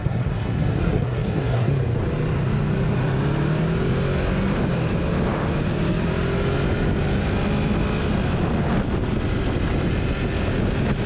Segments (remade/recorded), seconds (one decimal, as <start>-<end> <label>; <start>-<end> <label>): 0.0-1.7 remade; 1.7-11.1 recorded